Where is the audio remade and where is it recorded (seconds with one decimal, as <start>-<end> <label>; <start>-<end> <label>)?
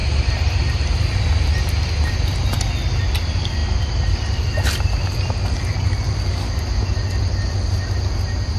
0.0-0.6 remade; 0.6-8.6 recorded